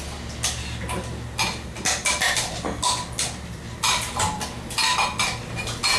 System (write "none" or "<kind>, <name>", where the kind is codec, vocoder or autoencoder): none